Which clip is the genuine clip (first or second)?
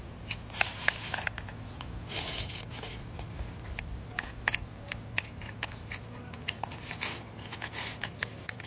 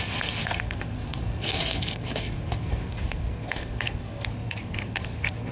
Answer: first